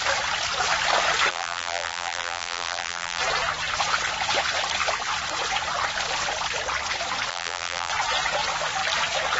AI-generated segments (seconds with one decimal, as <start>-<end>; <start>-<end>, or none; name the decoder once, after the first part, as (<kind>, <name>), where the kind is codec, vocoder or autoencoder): 1.3-3.2 (vocoder, BigVGAN v2); 7.3-7.9

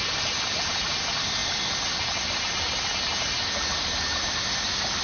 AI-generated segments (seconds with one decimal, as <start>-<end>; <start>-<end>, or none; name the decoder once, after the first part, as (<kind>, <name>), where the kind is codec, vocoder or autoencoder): none

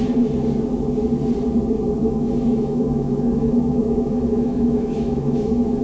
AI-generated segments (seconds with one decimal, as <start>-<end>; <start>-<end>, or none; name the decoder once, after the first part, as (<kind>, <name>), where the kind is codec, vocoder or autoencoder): 2.0-5.8 (autoencoder, DAC-VAE)

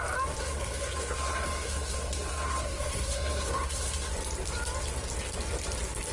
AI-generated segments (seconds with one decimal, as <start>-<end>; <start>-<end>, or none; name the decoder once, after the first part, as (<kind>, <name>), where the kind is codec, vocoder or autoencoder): 0.4-4.1 (codec, SNAC)